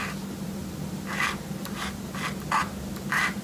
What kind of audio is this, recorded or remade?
recorded